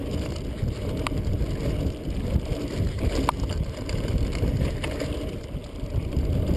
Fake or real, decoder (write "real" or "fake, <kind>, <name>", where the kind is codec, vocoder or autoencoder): real